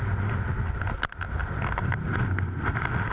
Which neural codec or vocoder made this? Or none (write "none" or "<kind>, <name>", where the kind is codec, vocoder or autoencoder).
none